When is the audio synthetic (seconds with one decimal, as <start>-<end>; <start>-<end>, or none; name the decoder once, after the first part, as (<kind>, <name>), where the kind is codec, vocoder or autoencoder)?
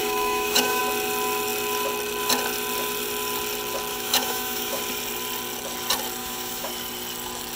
0.0-0.8 (autoencoder, DAC-VAE); 3.9-4.8; 6.2-6.7